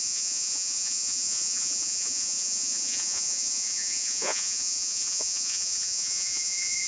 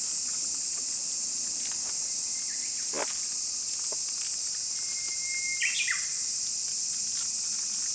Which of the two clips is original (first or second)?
second